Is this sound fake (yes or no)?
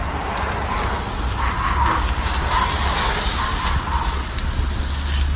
no